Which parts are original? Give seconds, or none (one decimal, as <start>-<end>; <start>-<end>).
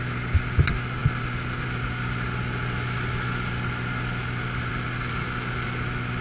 0.0-6.2